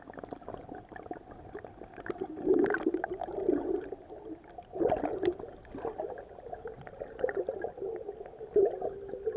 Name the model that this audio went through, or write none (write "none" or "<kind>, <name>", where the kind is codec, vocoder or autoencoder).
none